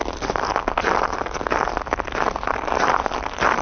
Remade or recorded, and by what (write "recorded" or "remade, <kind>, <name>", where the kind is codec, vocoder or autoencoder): recorded